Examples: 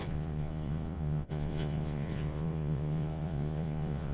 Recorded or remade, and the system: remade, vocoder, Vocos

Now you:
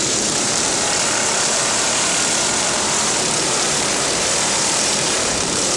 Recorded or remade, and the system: remade, vocoder, BigVGAN v2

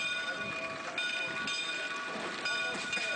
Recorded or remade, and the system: recorded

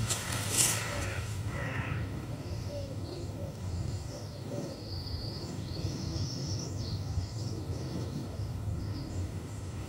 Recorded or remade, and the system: remade, codec, DAC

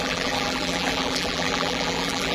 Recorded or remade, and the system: remade, vocoder, BigVGAN v2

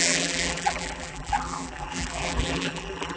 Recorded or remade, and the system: remade, vocoder, BigVGAN v2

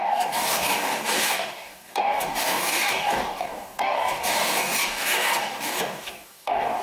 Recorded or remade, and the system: remade, codec, DAC